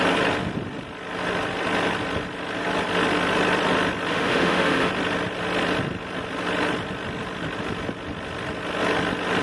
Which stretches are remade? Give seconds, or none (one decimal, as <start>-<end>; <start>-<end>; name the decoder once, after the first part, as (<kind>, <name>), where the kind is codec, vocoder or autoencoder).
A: 4.1-4.9 (autoencoder, DAC-VAE)